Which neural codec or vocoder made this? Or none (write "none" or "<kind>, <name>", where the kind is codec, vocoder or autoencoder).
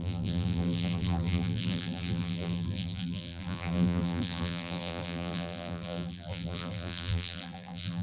vocoder, BigVGAN v2